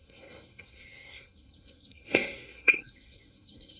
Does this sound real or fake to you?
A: fake